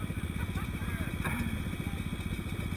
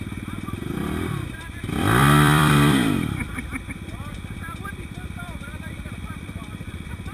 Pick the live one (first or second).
first